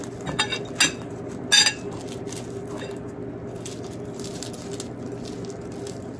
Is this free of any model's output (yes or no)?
yes